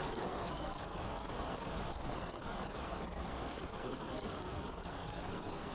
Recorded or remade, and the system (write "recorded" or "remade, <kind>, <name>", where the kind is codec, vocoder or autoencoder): remade, codec, SNAC